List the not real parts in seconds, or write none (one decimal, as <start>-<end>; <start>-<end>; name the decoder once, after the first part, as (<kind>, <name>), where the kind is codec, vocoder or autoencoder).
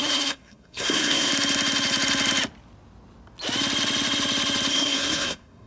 0.0-1.3 (codec, SNAC); 4.7-5.7